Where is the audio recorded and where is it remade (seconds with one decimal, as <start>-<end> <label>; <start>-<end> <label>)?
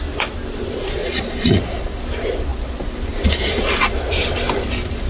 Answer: 0.0-1.0 recorded; 1.0-2.0 remade; 2.0-5.1 recorded